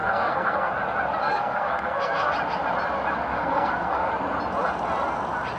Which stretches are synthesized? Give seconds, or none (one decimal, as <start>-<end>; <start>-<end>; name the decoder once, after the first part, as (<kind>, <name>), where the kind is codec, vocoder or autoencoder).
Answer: 0.0-0.7 (codec, SNAC); 1.2-2.3; 3.3-4.1